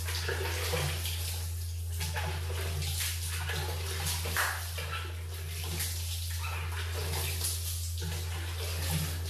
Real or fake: real